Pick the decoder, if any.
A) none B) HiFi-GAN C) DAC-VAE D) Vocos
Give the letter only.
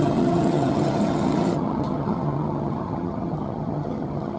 B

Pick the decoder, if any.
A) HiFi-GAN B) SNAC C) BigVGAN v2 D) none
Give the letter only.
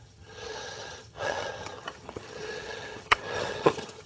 A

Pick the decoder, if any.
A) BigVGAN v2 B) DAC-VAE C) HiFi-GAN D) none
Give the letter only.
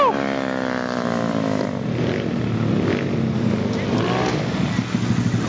D